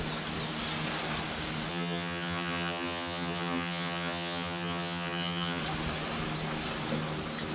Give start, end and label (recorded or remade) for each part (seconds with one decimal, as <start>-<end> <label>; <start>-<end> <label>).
0.0-1.7 recorded; 1.7-5.6 remade; 5.6-7.5 recorded